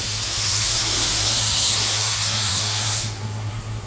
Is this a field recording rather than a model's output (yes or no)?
no